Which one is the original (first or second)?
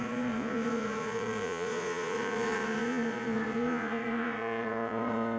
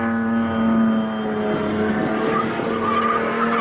second